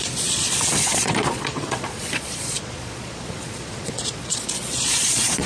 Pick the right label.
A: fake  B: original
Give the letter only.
A